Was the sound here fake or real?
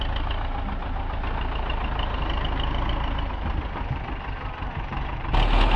real